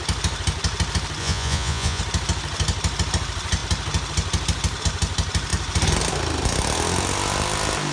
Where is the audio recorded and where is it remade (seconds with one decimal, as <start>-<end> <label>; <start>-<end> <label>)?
0.0-1.2 recorded; 1.2-2.0 remade; 2.0-7.9 recorded